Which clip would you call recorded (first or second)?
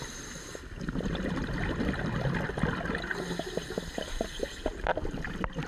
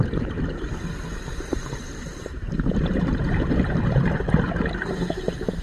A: first